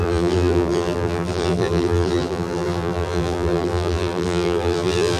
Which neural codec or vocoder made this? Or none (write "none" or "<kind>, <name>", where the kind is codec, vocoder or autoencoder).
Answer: vocoder, BigVGAN v2